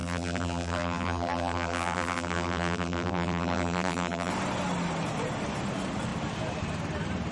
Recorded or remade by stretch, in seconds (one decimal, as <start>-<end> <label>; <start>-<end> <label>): 0.0-4.3 remade; 4.3-7.3 recorded